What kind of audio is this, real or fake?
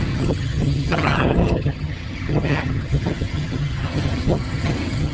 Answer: fake